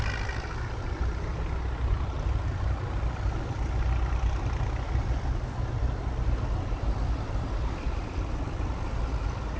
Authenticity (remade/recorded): recorded